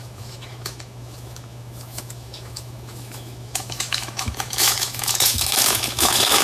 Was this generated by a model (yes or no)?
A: yes